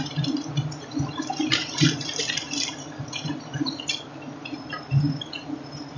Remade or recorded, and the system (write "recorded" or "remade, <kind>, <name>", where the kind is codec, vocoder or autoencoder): remade, vocoder, BigVGAN v2